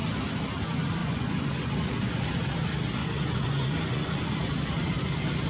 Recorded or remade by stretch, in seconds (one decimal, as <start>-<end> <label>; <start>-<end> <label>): 0.0-1.0 recorded; 1.0-2.2 remade; 2.2-3.0 recorded; 3.0-4.3 remade; 4.3-5.5 recorded